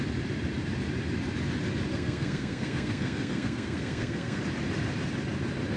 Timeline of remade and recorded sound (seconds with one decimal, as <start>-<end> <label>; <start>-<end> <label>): 0.0-1.9 recorded; 1.9-4.4 remade; 4.4-5.8 recorded